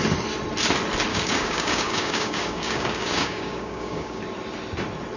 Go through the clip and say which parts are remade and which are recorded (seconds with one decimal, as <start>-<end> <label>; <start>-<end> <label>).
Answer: 0.0-1.1 recorded; 1.1-4.2 remade; 4.2-5.2 recorded